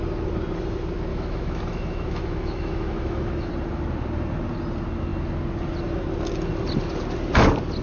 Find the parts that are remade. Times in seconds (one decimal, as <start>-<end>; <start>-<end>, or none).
1.1-3.5